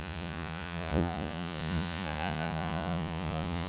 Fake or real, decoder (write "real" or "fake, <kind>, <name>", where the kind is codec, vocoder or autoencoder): fake, vocoder, Vocos